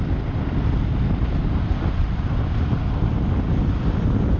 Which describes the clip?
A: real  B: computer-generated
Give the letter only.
A